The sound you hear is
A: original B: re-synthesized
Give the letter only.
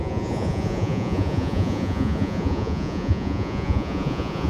B